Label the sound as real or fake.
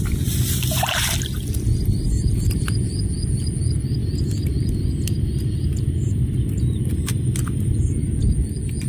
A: real